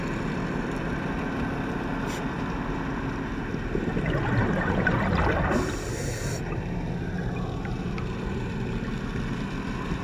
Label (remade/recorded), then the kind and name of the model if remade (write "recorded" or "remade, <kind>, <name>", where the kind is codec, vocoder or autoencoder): recorded